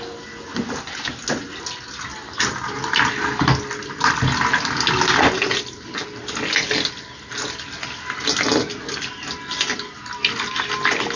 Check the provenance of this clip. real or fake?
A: real